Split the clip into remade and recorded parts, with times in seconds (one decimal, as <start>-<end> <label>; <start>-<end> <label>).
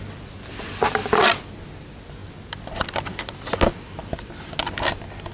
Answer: 0.0-5.3 recorded